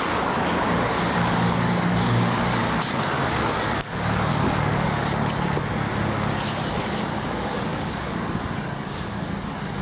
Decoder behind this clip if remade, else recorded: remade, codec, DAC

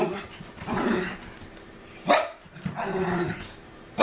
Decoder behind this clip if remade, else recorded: remade, vocoder, BigVGAN v2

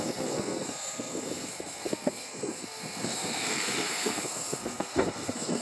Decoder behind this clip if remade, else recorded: remade, codec, SNAC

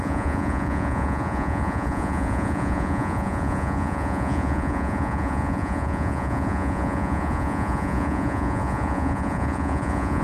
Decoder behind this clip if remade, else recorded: remade, vocoder, Vocos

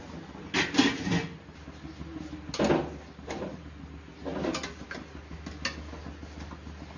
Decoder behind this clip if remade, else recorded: recorded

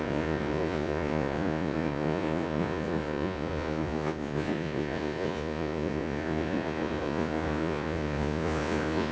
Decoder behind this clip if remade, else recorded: remade, vocoder, Vocos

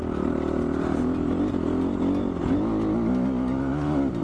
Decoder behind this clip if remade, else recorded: recorded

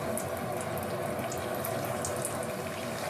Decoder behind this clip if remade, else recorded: recorded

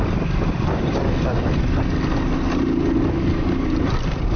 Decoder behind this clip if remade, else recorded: recorded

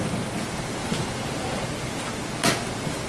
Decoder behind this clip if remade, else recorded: recorded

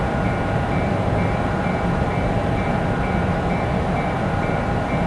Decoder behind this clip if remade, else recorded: remade, vocoder, BigVGAN v2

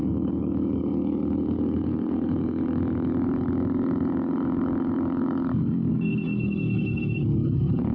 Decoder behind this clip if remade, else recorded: remade, codec, DAC